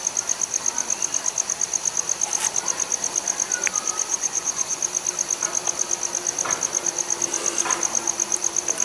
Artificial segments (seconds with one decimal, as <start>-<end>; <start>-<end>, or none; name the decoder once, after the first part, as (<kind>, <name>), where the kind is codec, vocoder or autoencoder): 4.1-4.8 (vocoder, Vocos)